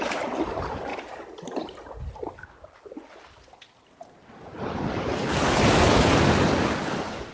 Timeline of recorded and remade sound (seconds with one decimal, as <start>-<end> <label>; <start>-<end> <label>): 0.0-7.3 recorded